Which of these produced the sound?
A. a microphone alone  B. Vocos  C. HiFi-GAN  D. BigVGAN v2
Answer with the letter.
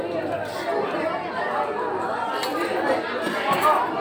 A